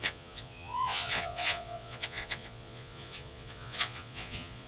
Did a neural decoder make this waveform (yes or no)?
yes